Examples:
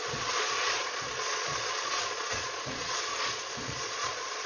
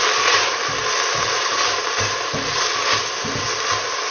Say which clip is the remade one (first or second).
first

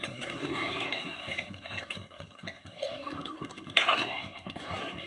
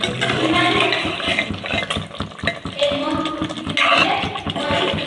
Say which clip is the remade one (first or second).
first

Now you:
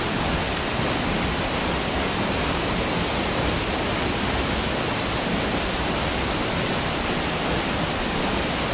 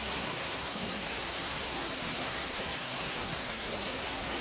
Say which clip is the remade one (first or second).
second